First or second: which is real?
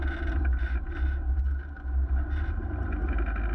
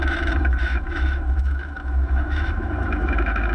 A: first